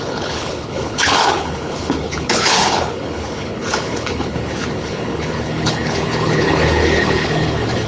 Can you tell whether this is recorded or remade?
remade